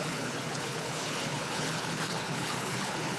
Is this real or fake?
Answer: fake